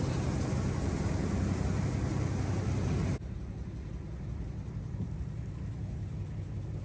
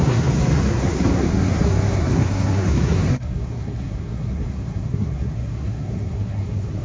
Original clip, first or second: first